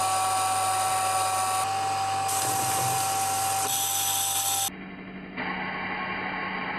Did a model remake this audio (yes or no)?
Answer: no